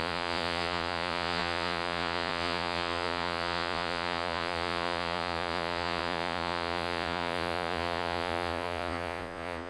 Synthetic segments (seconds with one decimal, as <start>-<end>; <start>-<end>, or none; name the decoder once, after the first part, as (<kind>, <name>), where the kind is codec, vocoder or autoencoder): 0.0-9.7 (vocoder, Vocos)